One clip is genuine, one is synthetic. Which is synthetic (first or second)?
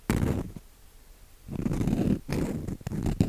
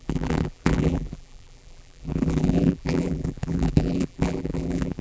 second